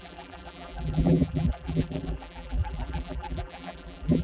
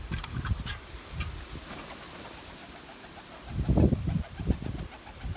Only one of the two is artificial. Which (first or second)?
first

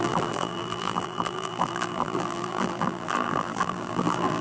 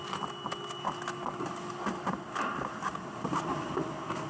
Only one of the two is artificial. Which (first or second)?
first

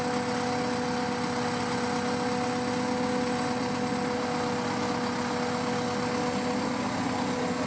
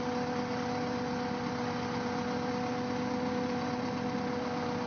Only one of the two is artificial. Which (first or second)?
second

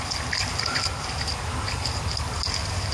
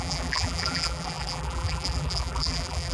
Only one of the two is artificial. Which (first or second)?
second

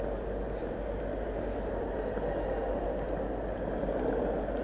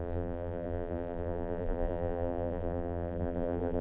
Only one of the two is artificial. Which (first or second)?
second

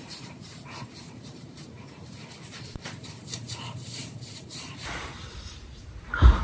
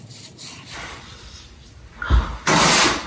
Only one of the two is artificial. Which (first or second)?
first